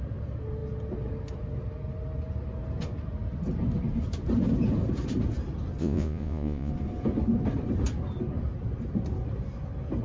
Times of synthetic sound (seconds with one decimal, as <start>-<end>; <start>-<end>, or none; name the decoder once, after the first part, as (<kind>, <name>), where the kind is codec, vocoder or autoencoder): 5.8-6.7 (vocoder, Vocos)